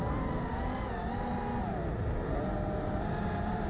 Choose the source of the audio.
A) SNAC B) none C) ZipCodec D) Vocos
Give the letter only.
B